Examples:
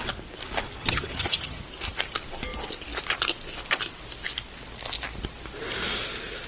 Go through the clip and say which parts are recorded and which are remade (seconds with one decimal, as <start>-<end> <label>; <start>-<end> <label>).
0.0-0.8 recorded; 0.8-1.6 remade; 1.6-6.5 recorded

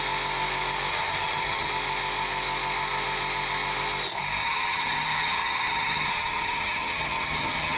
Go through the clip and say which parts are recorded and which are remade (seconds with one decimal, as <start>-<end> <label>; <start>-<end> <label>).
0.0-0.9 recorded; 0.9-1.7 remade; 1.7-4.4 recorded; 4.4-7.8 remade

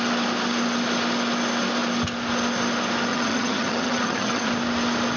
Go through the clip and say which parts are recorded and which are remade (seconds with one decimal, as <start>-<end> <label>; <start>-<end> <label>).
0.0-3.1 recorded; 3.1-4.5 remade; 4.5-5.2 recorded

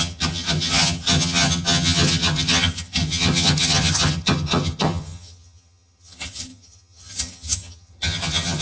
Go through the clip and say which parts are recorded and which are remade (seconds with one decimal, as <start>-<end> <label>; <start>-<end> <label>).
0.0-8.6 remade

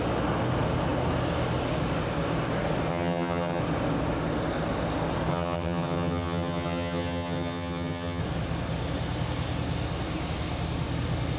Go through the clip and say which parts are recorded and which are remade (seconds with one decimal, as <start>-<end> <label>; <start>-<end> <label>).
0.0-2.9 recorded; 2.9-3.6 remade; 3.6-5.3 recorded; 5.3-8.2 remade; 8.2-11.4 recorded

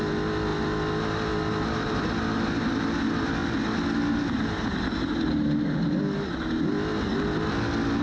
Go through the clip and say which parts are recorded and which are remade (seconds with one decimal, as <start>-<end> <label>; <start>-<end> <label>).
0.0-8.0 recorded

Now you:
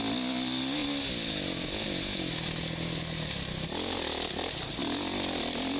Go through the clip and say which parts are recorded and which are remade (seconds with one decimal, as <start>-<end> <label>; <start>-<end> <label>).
0.0-5.8 recorded

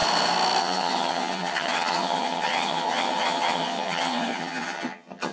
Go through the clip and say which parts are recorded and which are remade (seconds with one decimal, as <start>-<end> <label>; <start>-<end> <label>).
0.0-0.6 recorded; 0.6-5.3 remade